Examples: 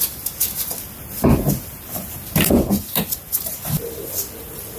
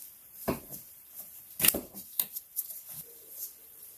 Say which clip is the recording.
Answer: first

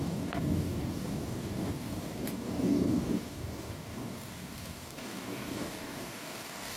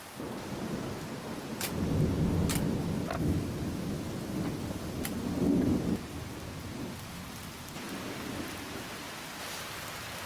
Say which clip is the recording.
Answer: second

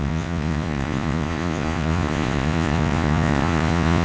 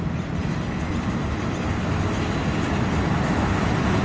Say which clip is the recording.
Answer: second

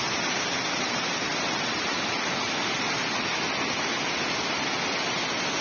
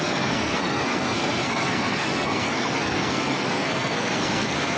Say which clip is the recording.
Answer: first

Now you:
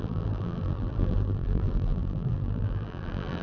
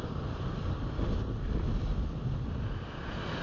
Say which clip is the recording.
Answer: second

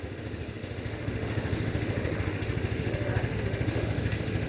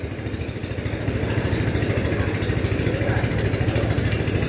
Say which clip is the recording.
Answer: second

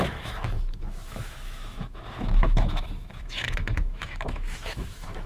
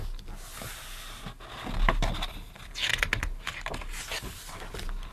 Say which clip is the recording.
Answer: second